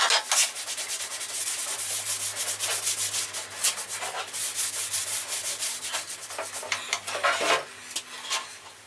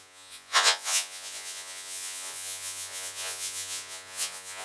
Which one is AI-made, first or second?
second